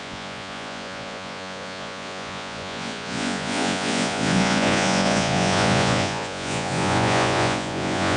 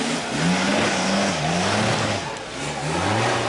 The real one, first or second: second